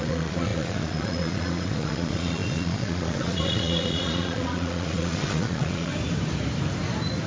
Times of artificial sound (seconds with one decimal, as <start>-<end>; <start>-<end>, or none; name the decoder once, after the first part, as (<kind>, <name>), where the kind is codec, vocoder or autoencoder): 0.0-5.9 (vocoder, Vocos)